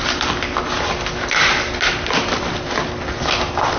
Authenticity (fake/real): real